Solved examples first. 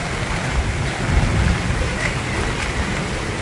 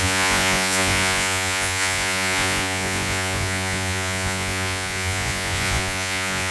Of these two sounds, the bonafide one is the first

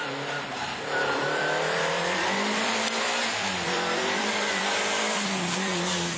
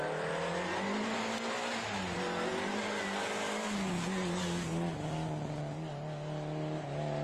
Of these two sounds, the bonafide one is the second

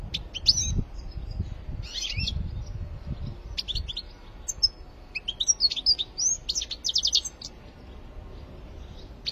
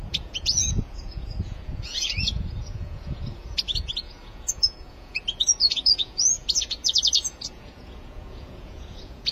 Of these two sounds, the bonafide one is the first